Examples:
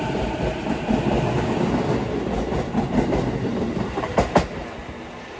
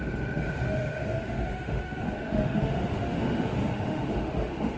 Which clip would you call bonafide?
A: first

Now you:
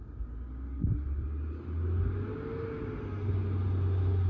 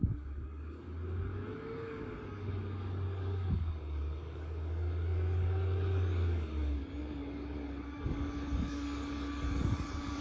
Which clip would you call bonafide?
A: first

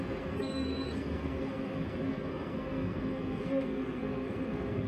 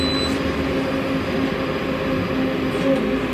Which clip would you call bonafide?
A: second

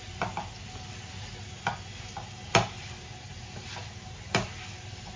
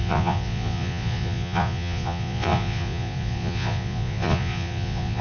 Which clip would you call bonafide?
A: first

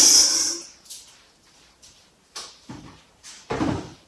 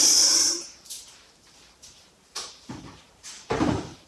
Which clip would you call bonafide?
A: first